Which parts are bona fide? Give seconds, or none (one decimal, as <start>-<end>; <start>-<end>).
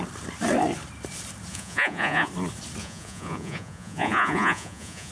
0.0-1.5; 2.3-2.8